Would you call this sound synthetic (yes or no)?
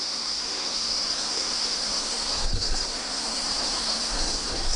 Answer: yes